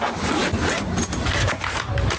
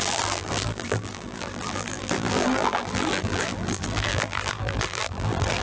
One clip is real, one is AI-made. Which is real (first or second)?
first